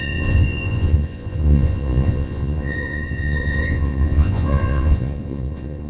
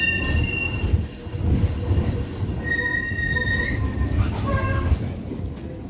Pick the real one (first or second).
second